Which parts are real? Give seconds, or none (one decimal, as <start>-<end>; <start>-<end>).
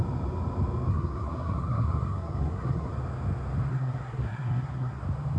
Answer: 0.0-0.9; 2.9-3.7; 5.0-5.4